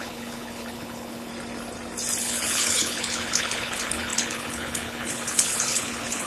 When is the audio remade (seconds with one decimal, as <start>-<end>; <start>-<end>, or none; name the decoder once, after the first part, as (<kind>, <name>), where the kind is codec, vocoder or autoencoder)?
0.0-1.3 (codec, HILCodec); 2.2-6.3